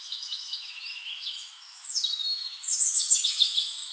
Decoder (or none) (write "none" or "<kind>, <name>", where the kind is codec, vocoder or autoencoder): autoencoder, DAC-VAE